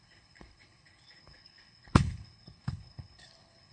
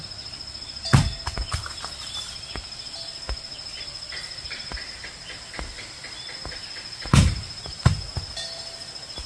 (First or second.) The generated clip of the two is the first